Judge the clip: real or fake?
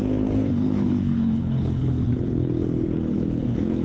fake